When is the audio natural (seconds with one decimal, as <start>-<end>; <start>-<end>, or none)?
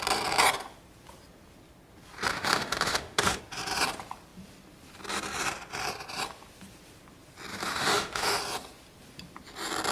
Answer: 0.0-2.3; 3.4-7.5; 8.4-9.9